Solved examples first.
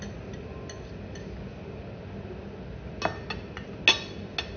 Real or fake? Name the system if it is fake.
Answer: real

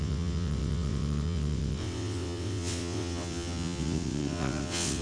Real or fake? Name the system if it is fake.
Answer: fake, vocoder, WaveNeXt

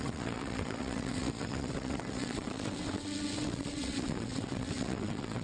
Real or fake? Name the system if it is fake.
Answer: fake, vocoder, WaveNeXt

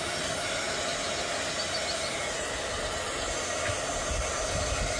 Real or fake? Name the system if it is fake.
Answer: real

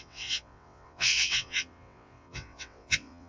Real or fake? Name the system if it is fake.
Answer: fake, vocoder, WaveNeXt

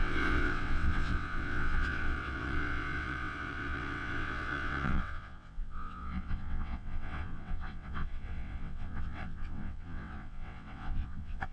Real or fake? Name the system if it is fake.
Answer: fake, vocoder, WaveNeXt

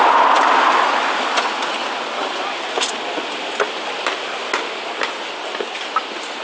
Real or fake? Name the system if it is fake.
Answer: real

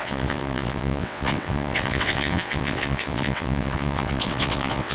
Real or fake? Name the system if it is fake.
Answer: fake, vocoder, WaveNeXt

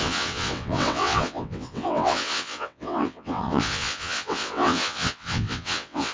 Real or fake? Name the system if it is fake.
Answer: fake, vocoder, WaveNeXt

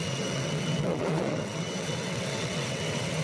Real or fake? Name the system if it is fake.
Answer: fake, vocoder, WaveNeXt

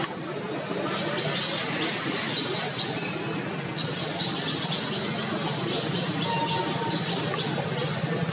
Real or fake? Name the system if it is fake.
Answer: real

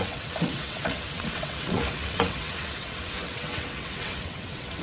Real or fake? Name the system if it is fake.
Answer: fake, vocoder, WaveNeXt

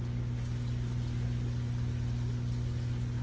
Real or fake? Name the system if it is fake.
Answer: real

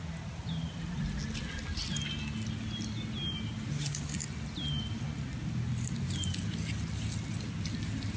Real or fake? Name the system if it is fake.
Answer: real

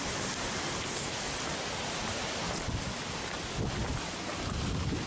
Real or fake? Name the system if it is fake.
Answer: real